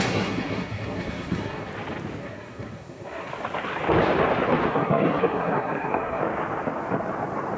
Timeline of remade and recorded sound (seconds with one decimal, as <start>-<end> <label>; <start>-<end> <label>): 0.0-1.7 remade; 1.7-2.2 recorded; 2.2-3.3 remade; 3.3-4.7 recorded; 4.7-6.2 remade; 6.2-7.6 recorded